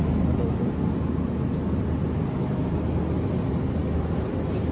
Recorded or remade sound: recorded